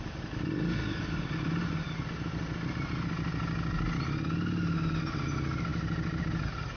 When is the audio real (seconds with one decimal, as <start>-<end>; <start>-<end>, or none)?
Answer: 0.0-6.8

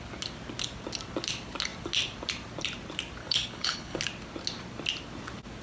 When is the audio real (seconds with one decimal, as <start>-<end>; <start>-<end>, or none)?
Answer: 0.0-3.2; 4.0-5.6

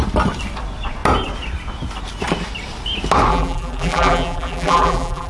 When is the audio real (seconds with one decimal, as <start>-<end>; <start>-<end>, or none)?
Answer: 0.0-3.3

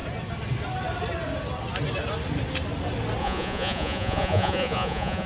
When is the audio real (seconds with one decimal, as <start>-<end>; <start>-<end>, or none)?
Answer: 0.0-3.2

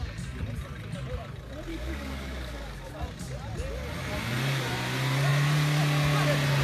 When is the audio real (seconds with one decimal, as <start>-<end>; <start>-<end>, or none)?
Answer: 0.0-1.7; 2.9-6.6

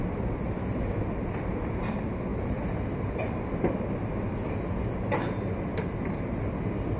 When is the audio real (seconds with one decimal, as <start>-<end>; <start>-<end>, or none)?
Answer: 0.0-2.3; 3.5-5.7; 6.5-7.0

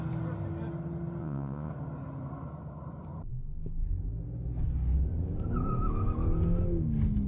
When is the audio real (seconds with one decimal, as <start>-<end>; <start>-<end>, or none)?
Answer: 0.0-1.2; 1.7-7.3

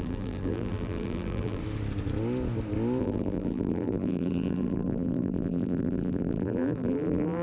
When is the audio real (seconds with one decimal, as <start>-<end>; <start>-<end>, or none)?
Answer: 1.6-3.0